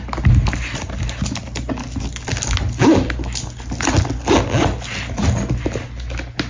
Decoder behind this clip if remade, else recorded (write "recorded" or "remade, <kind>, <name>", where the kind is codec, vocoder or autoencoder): recorded